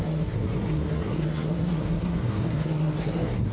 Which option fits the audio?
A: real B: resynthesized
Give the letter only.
B